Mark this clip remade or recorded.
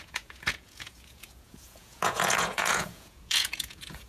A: remade